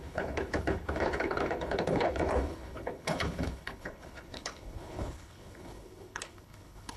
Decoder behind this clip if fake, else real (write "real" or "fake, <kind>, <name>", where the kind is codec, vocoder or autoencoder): fake, codec, HILCodec